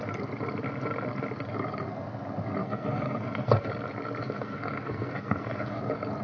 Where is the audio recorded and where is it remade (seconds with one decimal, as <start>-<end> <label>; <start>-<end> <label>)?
0.0-2.6 recorded; 2.6-3.7 remade; 3.7-4.2 recorded; 4.2-5.8 remade; 5.8-6.2 recorded